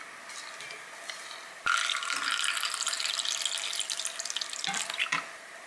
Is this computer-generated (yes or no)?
no